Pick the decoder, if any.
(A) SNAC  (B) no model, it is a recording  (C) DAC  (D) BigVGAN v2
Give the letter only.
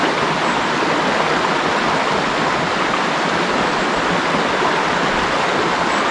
B